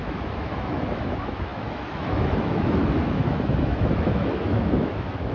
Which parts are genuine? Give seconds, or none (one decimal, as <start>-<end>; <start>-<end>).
none